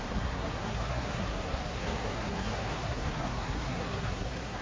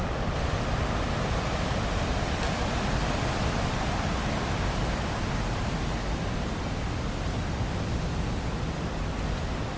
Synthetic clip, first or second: first